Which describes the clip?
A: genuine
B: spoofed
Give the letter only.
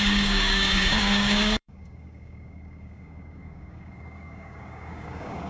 B